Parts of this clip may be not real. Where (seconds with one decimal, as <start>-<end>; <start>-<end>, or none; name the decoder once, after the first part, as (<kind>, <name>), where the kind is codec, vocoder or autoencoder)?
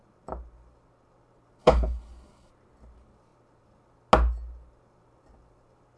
1.6-2.5 (codec, HILCodec)